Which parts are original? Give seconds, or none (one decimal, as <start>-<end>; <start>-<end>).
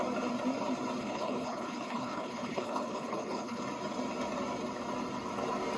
0.0-1.0; 3.6-5.8